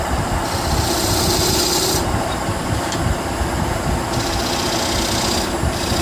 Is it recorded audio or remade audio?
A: remade